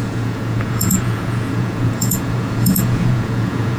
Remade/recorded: remade